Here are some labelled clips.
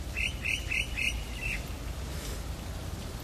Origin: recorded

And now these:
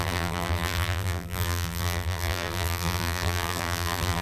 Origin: remade